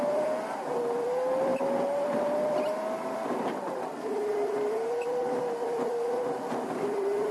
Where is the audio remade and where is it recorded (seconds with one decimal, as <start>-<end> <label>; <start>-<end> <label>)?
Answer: 0.0-7.3 remade